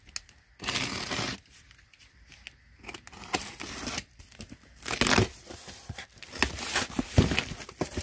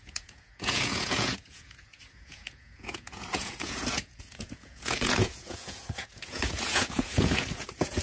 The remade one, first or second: second